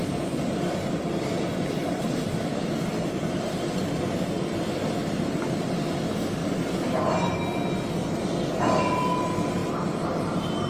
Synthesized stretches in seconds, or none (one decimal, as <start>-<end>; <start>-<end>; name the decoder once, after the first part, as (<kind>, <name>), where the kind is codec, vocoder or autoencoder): 0.0-4.0 (vocoder, BigVGAN v2); 6.4-7.0; 9.6-10.7